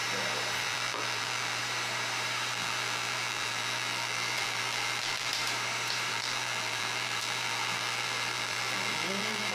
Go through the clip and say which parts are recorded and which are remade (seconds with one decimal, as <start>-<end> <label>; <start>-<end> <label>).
0.0-0.6 recorded; 0.6-1.6 remade; 1.6-2.5 recorded; 2.5-5.3 remade; 5.3-6.1 recorded; 6.1-9.5 remade